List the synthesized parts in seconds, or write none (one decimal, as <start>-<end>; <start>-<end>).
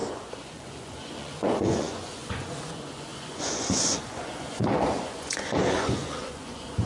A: 0.0-6.9